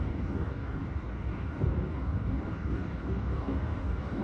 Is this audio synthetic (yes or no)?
yes